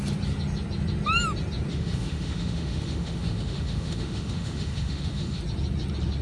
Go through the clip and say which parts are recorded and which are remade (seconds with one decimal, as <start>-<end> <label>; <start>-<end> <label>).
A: 0.0-1.7 recorded; 1.7-5.4 remade; 5.4-6.2 recorded